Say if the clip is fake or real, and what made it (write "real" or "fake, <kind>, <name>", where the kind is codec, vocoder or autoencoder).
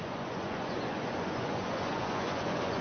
fake, vocoder, Vocos